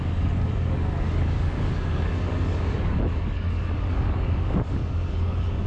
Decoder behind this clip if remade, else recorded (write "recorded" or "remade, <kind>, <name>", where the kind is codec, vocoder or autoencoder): remade, codec, DAC